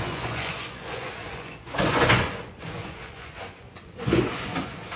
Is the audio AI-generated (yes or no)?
yes